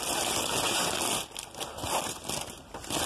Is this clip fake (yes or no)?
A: no